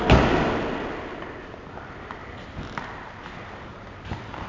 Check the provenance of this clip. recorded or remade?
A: recorded